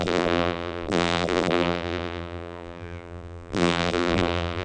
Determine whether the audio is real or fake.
fake